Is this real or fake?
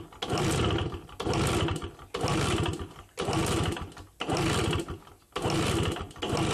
real